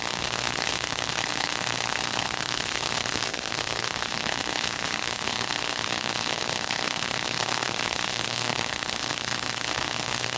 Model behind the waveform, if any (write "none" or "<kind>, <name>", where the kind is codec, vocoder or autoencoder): codec, SNAC